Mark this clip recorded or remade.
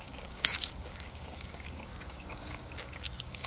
remade